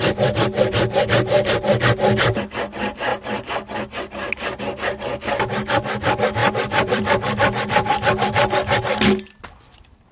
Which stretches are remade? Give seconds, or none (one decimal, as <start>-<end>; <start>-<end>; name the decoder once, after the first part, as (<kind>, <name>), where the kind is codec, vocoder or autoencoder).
6.4-9.4 (vocoder, BigVGAN v2)